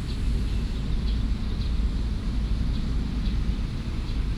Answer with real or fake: real